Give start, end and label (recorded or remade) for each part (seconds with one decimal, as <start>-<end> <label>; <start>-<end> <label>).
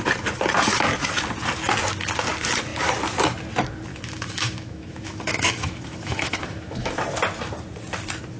0.0-3.9 recorded; 3.9-6.9 remade; 6.9-8.4 recorded